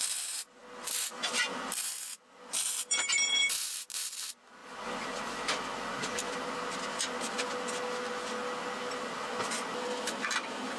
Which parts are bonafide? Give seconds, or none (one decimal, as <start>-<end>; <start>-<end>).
0.0-4.6; 6.6-10.8